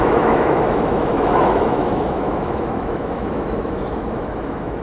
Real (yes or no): no